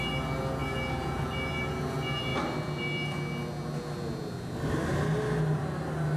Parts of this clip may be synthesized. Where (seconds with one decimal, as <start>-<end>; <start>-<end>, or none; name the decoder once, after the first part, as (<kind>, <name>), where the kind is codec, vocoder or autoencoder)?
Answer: none